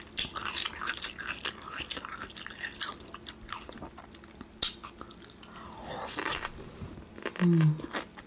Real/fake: real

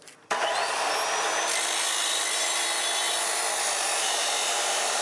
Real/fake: real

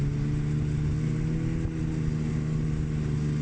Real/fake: real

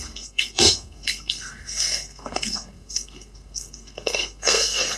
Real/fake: fake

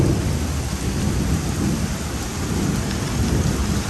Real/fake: real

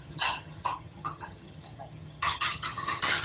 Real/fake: fake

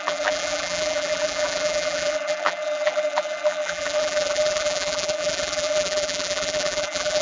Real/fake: fake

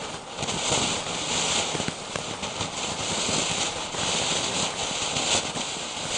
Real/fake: real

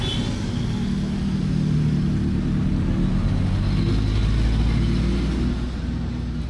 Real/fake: real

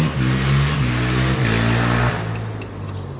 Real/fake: real